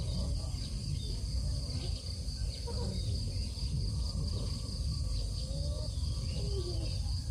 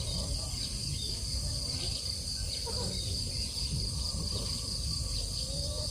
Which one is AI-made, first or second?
second